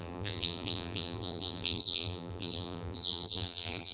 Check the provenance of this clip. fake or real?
fake